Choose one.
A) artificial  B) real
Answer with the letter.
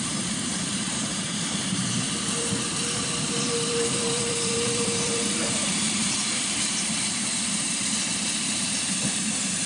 A